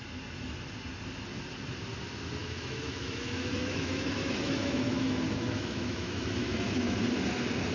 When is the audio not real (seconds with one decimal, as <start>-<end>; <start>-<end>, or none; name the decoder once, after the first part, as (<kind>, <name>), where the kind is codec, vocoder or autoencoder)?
2.4-7.0 (autoencoder, DAC-VAE)